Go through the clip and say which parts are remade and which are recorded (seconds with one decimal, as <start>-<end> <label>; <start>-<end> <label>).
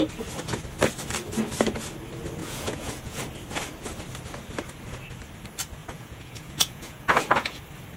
0.0-2.4 recorded; 2.4-3.2 remade; 3.2-5.8 recorded; 5.8-7.6 remade; 7.6-8.0 recorded